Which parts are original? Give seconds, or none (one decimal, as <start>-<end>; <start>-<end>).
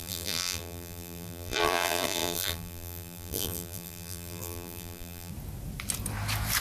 5.3-6.6